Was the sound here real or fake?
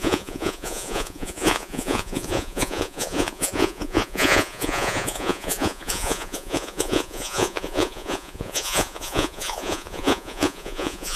fake